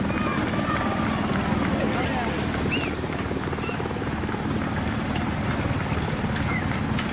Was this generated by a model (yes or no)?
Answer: no